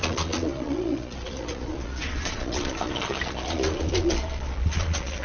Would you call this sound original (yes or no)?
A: no